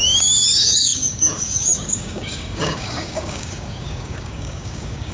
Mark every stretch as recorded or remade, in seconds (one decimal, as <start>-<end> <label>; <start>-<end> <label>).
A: 0.0-5.1 remade